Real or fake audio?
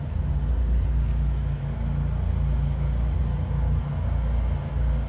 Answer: real